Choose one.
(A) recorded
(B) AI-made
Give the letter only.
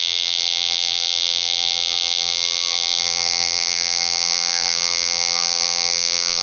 B